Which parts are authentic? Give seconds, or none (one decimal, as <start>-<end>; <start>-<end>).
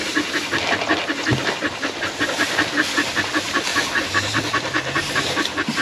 0.0-3.3; 3.7-4.5